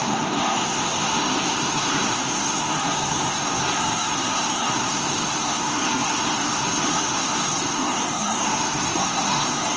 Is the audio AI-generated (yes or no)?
yes